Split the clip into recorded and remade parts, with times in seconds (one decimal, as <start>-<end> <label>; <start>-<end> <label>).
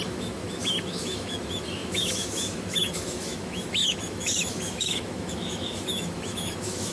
0.0-6.9 remade